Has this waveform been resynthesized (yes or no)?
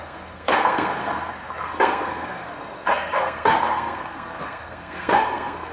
yes